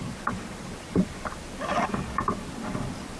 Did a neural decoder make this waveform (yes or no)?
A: no